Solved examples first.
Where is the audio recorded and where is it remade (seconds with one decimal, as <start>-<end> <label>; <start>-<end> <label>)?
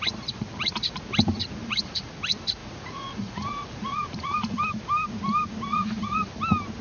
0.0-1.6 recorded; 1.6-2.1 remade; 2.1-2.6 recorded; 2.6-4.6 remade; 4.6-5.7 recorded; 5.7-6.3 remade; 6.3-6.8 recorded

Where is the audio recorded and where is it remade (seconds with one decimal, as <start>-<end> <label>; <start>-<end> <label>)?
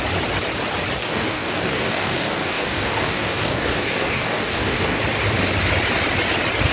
0.0-1.0 recorded; 1.0-5.0 remade; 5.0-6.7 recorded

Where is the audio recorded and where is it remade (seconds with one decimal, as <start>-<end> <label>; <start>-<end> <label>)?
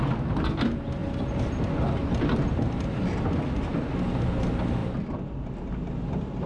0.0-1.0 recorded; 1.0-1.6 remade; 1.6-2.0 recorded; 2.0-3.7 remade; 3.7-4.8 recorded; 4.8-6.5 remade